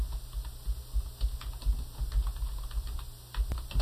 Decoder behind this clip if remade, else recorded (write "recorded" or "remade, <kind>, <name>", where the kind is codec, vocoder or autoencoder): recorded